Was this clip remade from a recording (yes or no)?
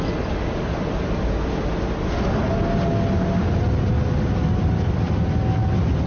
no